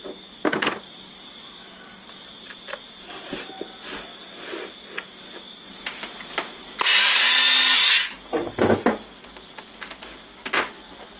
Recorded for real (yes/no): yes